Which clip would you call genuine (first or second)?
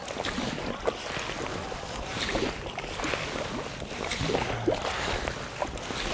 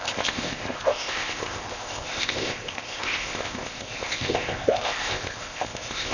first